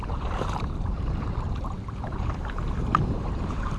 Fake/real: fake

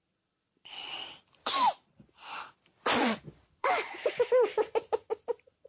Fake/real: fake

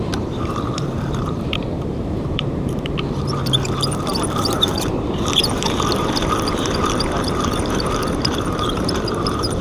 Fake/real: fake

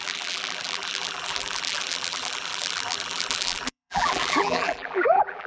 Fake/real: fake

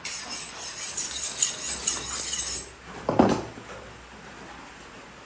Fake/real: real